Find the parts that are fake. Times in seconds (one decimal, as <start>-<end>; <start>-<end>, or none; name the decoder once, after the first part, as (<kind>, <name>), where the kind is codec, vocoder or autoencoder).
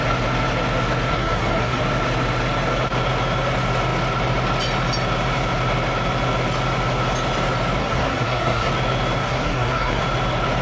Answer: 1.1-1.8 (codec, SNAC); 7.8-8.7; 9.2-10.0